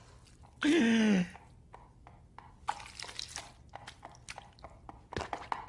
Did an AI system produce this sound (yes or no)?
no